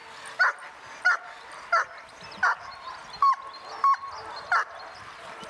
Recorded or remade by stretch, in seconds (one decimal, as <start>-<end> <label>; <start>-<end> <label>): 0.0-5.5 recorded